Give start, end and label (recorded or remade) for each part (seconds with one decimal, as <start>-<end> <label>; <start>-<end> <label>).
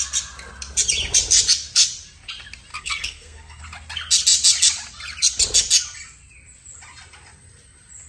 0.0-2.7 recorded; 2.7-3.6 remade; 3.6-8.1 recorded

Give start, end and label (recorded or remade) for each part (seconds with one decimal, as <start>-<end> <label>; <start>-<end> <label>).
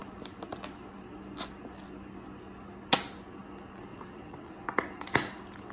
0.0-3.9 recorded; 3.9-4.5 remade; 4.5-5.7 recorded